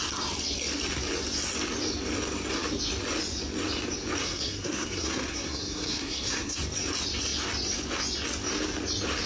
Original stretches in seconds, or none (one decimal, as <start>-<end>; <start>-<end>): 0.0-4.2; 6.6-9.3